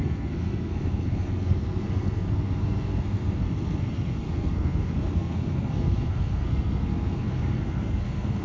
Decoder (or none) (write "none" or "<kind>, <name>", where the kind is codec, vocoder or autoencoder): codec, SNAC